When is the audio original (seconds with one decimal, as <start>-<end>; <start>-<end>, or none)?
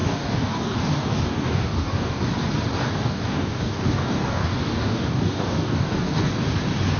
2.2-2.7; 6.3-7.0